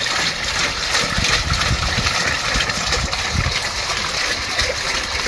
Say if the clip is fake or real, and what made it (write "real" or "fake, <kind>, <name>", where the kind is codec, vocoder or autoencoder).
real